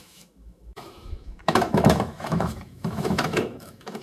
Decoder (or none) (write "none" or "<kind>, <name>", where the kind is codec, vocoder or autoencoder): autoencoder, DAC-VAE